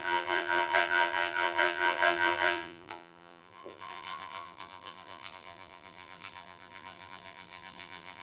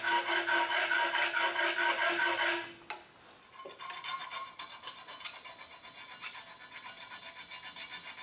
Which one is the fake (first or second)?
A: first